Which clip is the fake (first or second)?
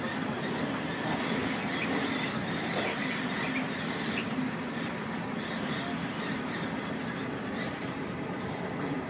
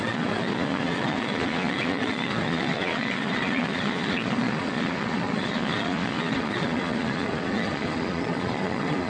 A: second